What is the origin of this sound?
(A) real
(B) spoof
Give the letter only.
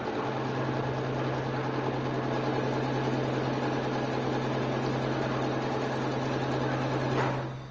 A